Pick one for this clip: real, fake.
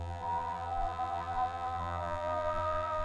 fake